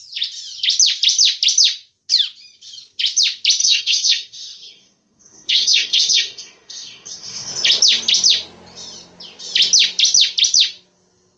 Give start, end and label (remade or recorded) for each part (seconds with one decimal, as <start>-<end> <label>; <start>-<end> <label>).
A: 0.0-3.6 recorded; 3.6-7.5 remade; 7.5-11.4 recorded